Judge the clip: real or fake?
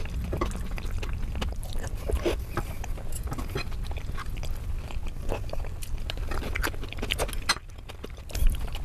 real